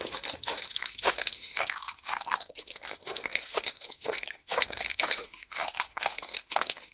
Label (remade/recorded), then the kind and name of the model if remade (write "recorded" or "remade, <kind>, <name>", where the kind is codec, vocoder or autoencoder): remade, autoencoder, DAC-VAE